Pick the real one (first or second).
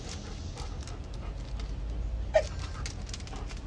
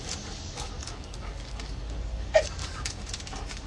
first